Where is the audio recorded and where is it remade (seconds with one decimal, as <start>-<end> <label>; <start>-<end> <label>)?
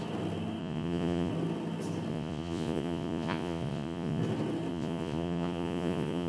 0.0-0.6 recorded; 0.6-1.3 remade; 1.3-2.1 recorded; 2.1-4.2 remade; 4.2-4.7 recorded; 4.7-6.3 remade